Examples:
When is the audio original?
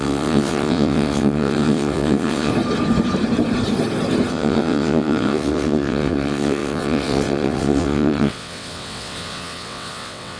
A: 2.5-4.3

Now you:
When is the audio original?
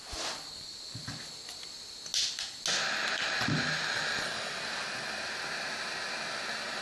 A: 0.0-6.8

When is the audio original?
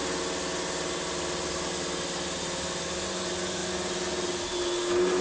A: 0.0-5.2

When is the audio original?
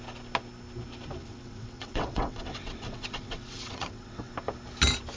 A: 0.0-1.2; 4.3-5.2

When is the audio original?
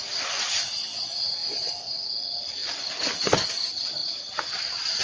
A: 0.0-5.0